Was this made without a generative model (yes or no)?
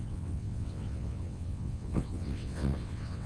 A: no